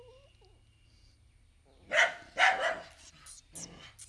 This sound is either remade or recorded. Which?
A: recorded